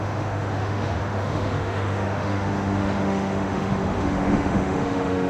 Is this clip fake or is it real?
fake